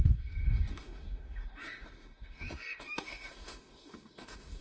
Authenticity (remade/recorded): remade